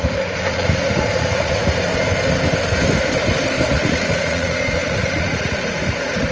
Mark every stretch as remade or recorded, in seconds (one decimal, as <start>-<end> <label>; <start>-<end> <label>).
0.0-1.9 remade; 1.9-3.7 recorded; 3.7-6.3 remade